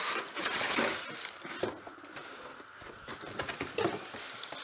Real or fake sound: real